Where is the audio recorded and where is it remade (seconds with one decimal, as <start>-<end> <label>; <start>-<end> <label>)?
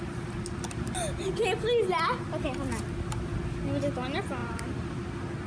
0.0-4.4 recorded; 4.4-4.9 remade; 4.9-5.5 recorded